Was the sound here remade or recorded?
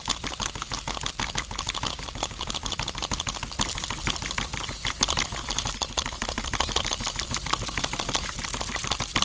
recorded